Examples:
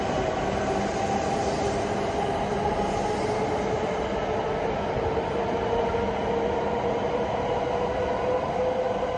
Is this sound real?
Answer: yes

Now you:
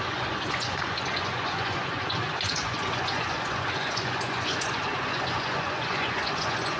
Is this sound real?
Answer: no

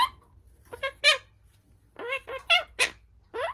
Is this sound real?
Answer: yes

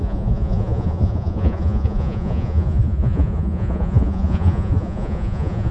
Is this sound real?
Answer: no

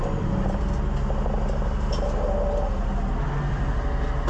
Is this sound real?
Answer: yes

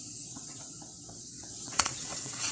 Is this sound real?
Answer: no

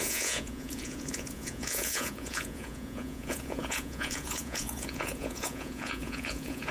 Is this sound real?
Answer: no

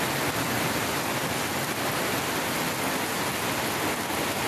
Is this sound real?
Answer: yes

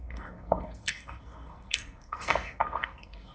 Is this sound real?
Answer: no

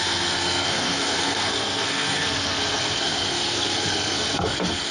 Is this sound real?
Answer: no